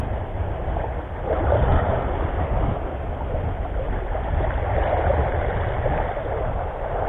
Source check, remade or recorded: recorded